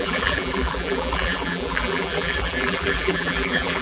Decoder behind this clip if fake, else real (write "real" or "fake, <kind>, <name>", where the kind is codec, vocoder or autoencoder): fake, vocoder, BigVGAN v2